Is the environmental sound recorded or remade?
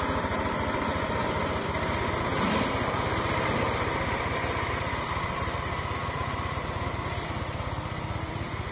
recorded